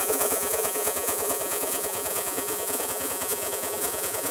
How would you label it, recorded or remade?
remade